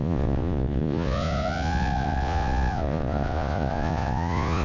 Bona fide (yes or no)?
no